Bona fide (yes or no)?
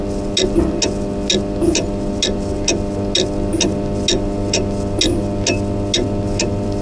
yes